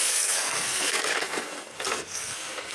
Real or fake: fake